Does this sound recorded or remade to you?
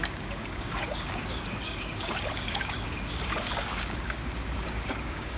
remade